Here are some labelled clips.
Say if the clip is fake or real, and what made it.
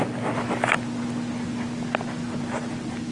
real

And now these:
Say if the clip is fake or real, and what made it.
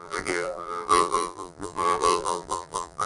fake, vocoder, BigVGAN v2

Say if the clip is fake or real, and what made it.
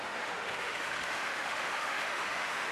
fake, autoencoder, DAC-VAE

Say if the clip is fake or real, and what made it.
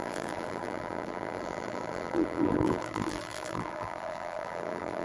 fake, vocoder, BigVGAN v2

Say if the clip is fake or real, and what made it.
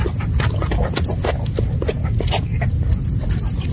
real